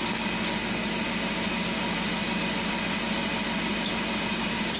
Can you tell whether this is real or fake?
real